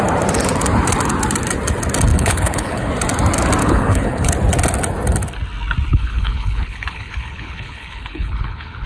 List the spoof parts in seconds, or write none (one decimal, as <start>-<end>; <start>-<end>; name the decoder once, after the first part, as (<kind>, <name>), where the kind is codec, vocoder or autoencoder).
2.1-2.9 (codec, HILCodec); 3.6-4.3; 5.9-8.9